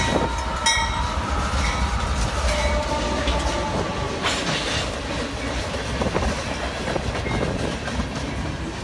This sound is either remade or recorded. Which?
recorded